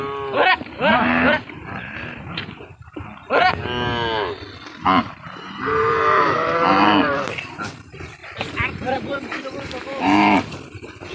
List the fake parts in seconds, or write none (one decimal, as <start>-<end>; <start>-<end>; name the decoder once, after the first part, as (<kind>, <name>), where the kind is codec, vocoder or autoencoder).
0.9-2.9 (vocoder, BigVGAN v2); 5.0-7.1; 8.2-10.4